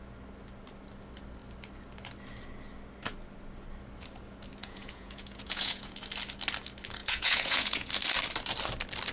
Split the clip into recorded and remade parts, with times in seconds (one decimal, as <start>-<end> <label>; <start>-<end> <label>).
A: 0.0-4.6 recorded; 4.6-5.9 remade; 5.9-7.0 recorded; 7.0-7.9 remade; 7.9-9.1 recorded